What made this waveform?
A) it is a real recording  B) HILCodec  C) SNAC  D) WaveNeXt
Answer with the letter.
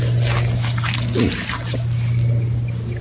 A